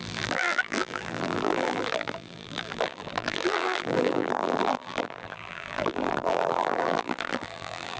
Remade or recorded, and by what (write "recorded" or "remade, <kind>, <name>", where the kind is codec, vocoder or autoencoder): remade, vocoder, BigVGAN v2